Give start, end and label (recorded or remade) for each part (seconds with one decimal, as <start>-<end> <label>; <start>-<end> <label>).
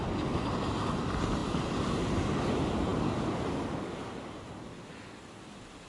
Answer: 0.0-5.9 recorded